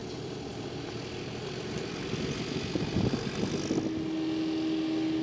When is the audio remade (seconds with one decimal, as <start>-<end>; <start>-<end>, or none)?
0.0-3.1